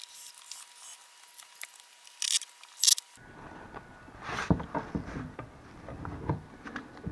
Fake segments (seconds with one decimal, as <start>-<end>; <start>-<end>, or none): none